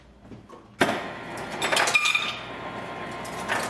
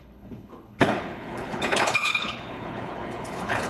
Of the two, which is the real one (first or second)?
first